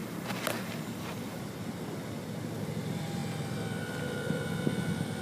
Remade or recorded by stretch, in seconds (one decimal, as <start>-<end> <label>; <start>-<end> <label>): 0.0-1.4 remade; 1.4-5.2 recorded